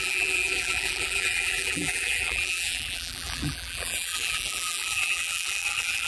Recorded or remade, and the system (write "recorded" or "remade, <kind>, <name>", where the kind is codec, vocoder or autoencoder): remade, vocoder, BigVGAN v2